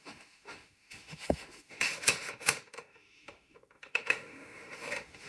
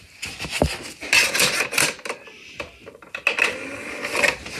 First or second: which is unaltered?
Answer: second